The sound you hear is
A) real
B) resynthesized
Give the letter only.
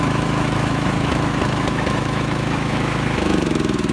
B